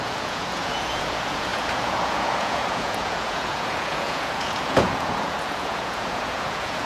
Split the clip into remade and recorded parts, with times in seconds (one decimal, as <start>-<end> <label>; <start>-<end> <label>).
0.0-6.9 remade